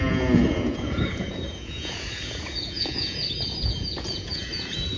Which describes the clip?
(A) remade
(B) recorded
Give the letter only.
A